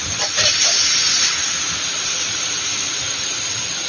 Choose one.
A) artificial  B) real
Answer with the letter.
B